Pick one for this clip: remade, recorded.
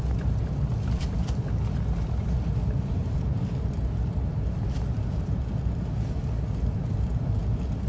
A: recorded